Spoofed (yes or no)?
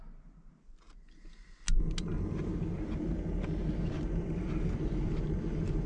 no